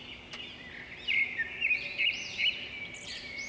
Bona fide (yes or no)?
yes